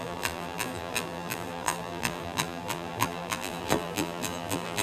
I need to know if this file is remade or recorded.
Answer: remade